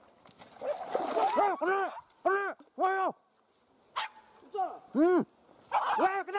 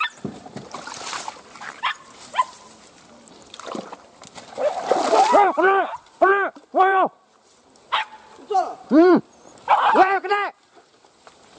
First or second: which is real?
first